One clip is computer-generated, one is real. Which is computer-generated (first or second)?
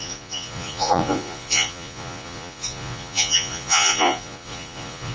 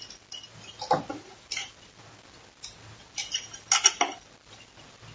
first